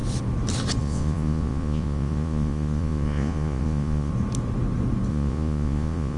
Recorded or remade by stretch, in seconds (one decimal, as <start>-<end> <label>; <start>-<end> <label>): 0.0-0.8 recorded; 0.8-4.1 remade; 4.1-5.1 recorded; 5.1-6.2 remade

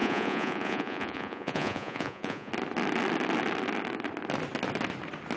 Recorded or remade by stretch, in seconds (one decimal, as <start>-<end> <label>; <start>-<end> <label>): 0.0-2.5 remade; 2.5-5.4 recorded

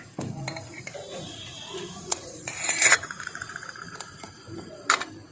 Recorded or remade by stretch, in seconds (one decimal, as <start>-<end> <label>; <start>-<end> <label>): 0.0-1.1 recorded; 1.1-4.3 remade; 4.3-5.3 recorded

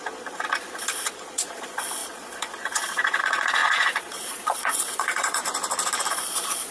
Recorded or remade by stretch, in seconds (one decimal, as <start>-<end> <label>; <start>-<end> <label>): 0.0-5.4 remade; 5.4-6.1 recorded; 6.1-6.7 remade

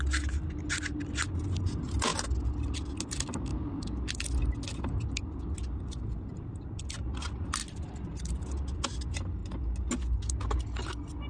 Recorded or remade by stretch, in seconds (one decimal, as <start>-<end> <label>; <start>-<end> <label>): 0.0-11.3 recorded

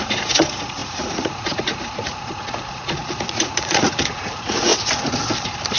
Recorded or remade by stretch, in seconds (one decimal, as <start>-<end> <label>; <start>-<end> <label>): 0.0-4.7 remade; 4.7-5.8 recorded

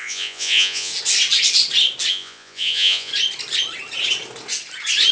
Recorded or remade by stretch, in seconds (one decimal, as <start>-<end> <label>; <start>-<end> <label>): 0.0-0.9 remade; 0.9-2.1 recorded; 2.1-3.1 remade; 3.1-5.1 recorded

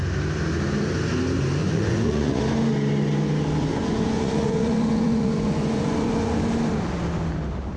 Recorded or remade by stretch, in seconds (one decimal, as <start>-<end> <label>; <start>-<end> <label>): 0.0-1.6 recorded; 1.6-2.4 remade; 2.4-3.7 recorded; 3.7-6.4 remade; 6.4-7.8 recorded